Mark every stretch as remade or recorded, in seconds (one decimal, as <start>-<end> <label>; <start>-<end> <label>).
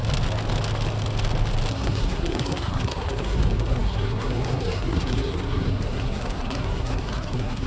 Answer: 0.0-1.7 recorded; 1.7-7.7 remade